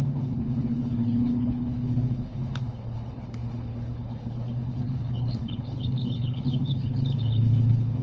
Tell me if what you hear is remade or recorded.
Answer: remade